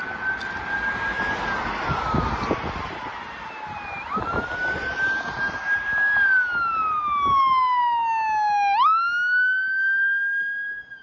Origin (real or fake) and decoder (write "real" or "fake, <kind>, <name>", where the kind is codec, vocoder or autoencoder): real